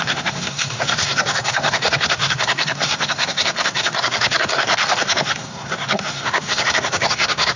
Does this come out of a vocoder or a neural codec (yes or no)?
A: yes